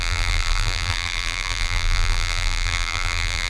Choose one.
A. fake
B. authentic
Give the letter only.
A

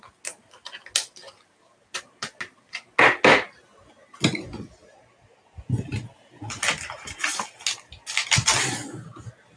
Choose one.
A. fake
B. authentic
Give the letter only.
B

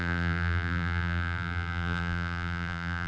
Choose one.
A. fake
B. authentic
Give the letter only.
A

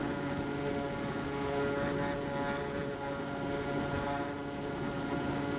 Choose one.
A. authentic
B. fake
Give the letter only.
A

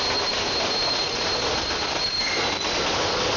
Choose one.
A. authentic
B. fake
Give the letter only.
A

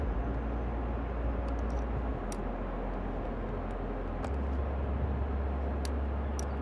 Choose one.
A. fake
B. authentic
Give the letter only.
B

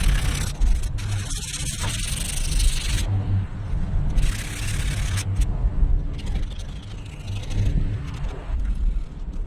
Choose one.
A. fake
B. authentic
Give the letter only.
B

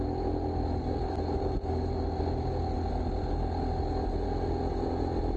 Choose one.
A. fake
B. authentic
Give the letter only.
B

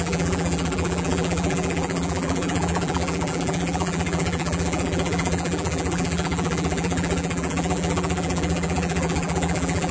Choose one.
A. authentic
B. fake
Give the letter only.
B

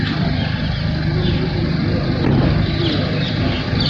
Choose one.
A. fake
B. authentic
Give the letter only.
B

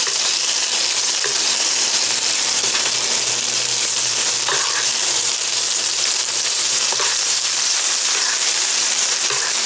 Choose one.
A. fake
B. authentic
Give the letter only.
A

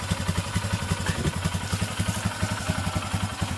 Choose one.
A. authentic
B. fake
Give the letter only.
A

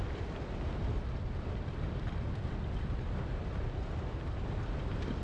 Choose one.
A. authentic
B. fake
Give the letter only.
A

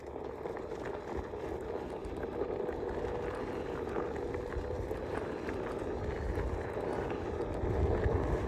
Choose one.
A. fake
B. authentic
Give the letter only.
B